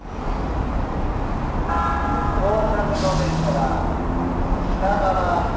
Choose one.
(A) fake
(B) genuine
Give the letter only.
B